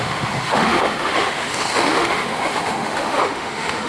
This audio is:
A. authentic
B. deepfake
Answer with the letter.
B